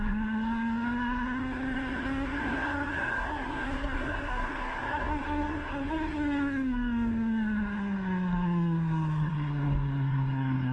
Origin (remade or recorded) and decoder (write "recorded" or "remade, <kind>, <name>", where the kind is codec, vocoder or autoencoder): remade, codec, SNAC